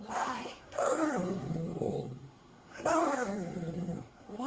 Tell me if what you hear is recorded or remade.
remade